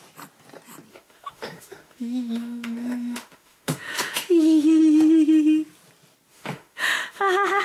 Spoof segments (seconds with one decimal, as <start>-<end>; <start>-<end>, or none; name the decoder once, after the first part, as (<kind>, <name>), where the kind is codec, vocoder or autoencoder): 0.9-4.8 (autoencoder, DAC-VAE); 6.3-7.6